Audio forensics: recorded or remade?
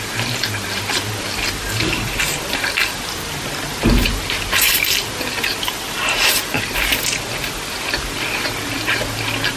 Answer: recorded